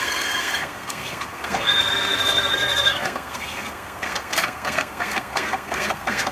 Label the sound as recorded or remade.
remade